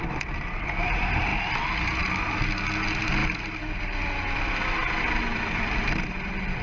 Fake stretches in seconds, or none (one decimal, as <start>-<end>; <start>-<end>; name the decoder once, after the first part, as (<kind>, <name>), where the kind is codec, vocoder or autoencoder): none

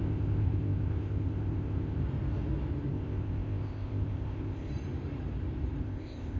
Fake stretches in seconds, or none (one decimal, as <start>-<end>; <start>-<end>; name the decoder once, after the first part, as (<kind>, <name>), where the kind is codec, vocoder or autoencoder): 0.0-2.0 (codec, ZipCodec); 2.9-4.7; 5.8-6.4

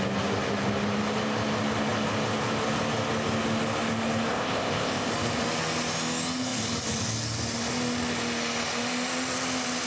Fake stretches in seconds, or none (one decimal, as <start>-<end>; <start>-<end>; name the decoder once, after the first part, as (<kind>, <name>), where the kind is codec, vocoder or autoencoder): 4.3-5.1 (codec, ZipCodec)